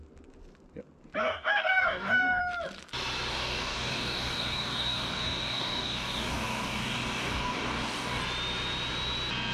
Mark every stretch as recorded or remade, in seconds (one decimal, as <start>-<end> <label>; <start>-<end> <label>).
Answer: 0.0-1.2 recorded; 1.2-2.4 remade; 2.4-3.3 recorded; 3.3-8.2 remade; 8.2-9.5 recorded